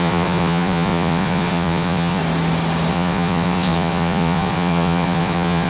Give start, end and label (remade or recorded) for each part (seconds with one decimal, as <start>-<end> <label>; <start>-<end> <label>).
0.0-2.2 remade; 2.2-2.9 recorded; 2.9-5.7 remade

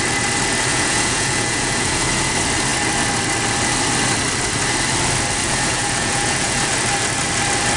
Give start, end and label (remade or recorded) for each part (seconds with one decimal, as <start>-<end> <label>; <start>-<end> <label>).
0.0-0.7 recorded; 0.7-2.3 remade; 2.3-5.4 recorded; 5.4-6.7 remade; 6.7-7.8 recorded

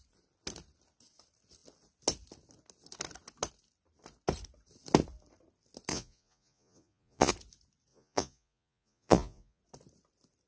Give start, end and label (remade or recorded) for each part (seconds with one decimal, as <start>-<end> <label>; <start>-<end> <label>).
0.0-5.9 recorded; 5.9-7.3 remade; 7.3-7.9 recorded; 7.9-9.6 remade; 9.6-10.5 recorded

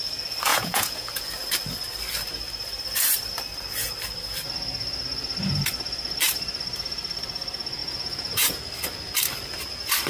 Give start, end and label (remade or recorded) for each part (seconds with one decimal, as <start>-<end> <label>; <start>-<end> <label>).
0.0-0.5 recorded; 0.5-1.1 remade; 1.1-7.8 recorded; 7.8-8.6 remade; 8.6-10.1 recorded

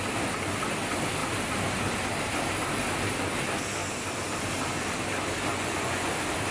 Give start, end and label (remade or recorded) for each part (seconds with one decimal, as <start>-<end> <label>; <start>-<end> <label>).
0.0-5.5 recorded; 5.5-6.1 remade; 6.1-6.5 recorded

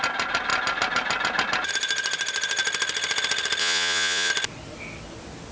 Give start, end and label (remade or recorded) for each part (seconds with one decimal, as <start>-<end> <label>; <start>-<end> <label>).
0.0-3.6 recorded; 3.6-4.3 remade; 4.3-5.5 recorded

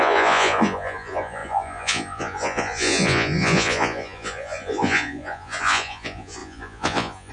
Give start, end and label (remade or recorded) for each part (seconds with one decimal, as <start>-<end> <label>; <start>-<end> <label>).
0.0-7.3 remade